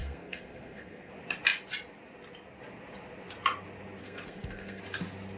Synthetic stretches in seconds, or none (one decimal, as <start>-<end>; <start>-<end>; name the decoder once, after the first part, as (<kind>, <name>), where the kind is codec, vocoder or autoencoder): 0.0-1.1 (codec, SNAC); 4.0-4.8